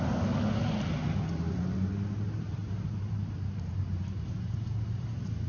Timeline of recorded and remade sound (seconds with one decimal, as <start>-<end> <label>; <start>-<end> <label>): 0.0-2.6 recorded; 2.6-5.5 remade